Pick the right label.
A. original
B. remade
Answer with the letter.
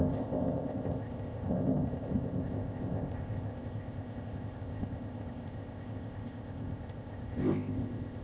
B